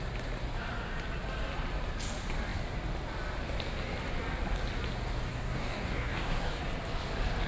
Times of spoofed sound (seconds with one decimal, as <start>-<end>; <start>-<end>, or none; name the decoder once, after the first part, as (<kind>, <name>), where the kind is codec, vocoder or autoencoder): 5.3-6.6 (codec, DAC)